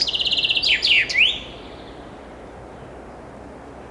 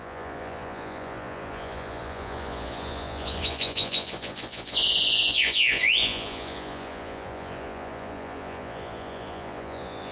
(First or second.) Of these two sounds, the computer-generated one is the second